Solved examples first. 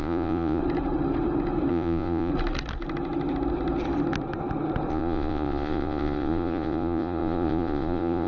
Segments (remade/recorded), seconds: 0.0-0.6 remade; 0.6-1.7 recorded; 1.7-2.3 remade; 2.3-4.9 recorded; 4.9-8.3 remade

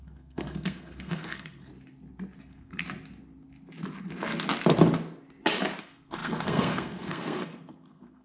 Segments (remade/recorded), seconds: 0.0-1.7 remade; 1.7-2.4 recorded; 2.4-2.8 remade; 2.8-5.8 recorded; 5.8-8.2 remade

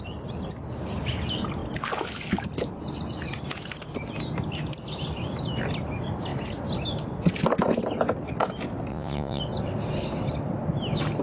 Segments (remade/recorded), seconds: 0.0-8.9 recorded; 8.9-9.4 remade; 9.4-11.2 recorded

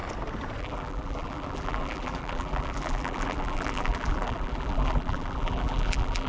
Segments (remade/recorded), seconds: 0.0-0.6 recorded; 0.6-6.3 remade

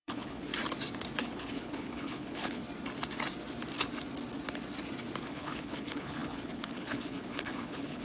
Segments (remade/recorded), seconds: 0.0-0.5 remade; 0.5-1.2 recorded; 1.2-2.6 remade; 2.6-5.2 recorded; 5.2-8.0 remade

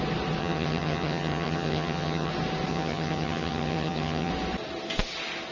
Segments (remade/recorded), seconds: 0.0-0.4 recorded; 0.4-2.3 remade; 2.3-2.7 recorded; 2.7-4.3 remade; 4.3-5.5 recorded

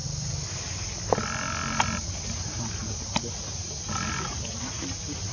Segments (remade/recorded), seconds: 0.0-5.3 recorded

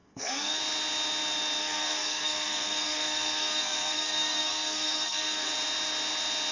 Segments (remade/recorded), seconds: 0.0-0.6 remade; 0.6-1.6 recorded; 1.6-5.5 remade; 5.5-6.5 recorded